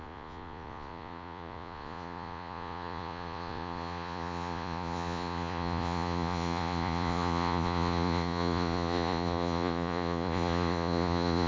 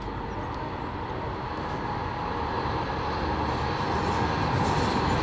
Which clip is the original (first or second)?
second